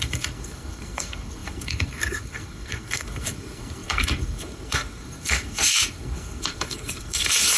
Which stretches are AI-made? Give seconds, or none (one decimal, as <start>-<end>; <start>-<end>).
0.0-7.6